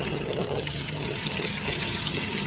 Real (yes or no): no